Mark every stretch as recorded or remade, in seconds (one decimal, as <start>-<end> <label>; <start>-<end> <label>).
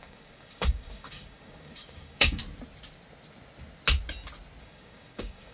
0.0-2.4 remade; 2.4-4.6 recorded; 4.6-5.5 remade